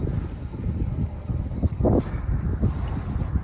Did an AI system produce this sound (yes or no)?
no